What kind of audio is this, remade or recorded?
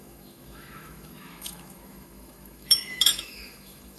remade